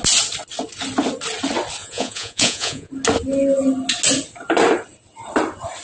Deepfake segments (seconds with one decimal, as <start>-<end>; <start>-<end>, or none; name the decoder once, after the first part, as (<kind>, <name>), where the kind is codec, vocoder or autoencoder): 1.8-2.9 (vocoder, Vocos)